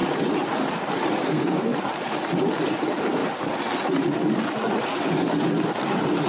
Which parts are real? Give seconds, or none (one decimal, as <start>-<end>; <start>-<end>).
0.0-1.2; 1.8-6.3